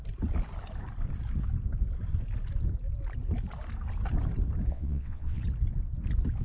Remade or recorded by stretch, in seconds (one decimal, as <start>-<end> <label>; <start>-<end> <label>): 0.0-4.7 recorded; 4.7-5.4 remade; 5.4-6.4 recorded